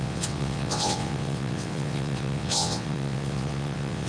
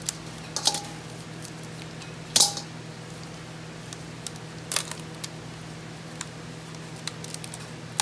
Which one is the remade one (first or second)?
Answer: first